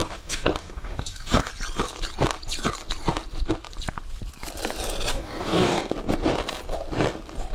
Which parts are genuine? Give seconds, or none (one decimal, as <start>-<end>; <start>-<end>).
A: 1.5-5.1; 5.9-7.5